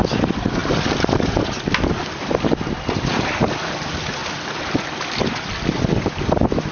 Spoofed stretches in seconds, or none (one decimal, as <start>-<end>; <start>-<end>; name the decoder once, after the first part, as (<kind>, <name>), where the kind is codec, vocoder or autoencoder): none